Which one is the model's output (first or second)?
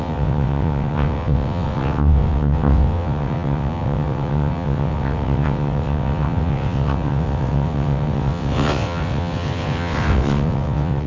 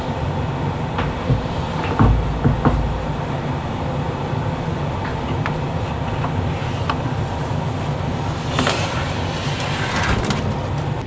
first